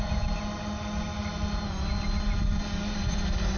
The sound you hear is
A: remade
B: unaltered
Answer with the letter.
B